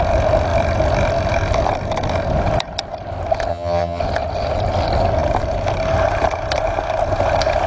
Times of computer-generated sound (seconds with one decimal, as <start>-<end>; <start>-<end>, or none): 3.5-4.0